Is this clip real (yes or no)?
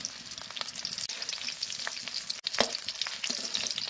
yes